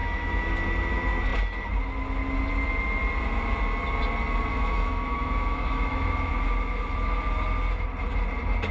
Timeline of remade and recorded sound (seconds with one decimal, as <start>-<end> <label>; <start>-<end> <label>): 0.0-0.5 remade; 0.5-4.5 recorded; 4.5-6.3 remade; 6.3-8.7 recorded